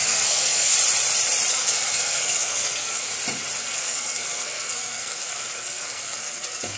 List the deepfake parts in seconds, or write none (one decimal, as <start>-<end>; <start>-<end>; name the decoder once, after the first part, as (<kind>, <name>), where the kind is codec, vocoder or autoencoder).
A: 0.0-0.7 (codec, SNAC); 1.5-3.1; 3.6-6.8